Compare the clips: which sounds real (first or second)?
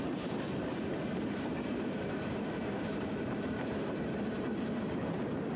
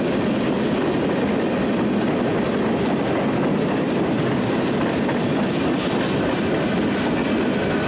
second